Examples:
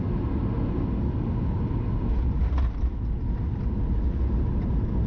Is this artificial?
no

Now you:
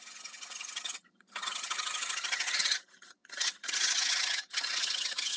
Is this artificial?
yes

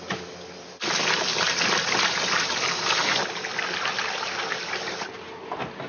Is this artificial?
no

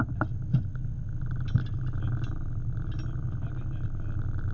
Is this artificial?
no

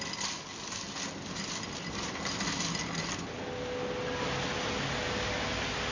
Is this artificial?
no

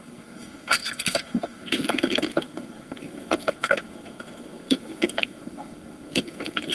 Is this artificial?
yes